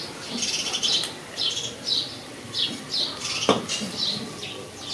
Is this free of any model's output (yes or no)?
no